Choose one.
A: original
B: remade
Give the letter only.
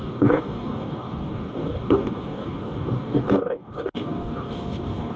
B